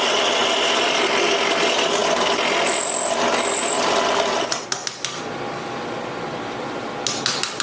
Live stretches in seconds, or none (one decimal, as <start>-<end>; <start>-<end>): 0.0-7.6